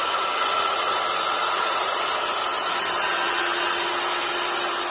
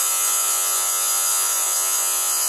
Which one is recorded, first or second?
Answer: first